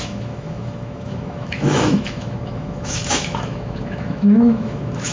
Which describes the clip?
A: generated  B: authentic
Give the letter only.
A